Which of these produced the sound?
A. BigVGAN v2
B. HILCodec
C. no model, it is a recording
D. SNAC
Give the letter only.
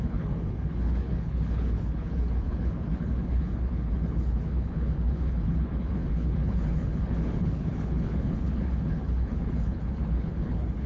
B